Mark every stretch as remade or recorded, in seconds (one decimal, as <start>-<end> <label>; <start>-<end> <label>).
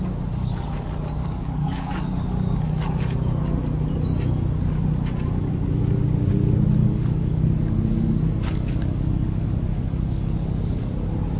0.0-1.2 recorded; 1.2-2.6 remade; 2.6-6.8 recorded; 6.8-10.9 remade; 10.9-11.4 recorded